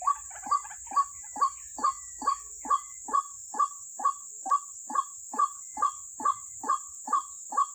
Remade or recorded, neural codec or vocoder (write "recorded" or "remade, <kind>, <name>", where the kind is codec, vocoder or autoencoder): recorded